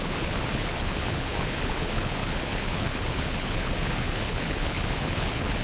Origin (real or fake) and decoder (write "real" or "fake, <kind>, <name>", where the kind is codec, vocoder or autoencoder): fake, codec, HILCodec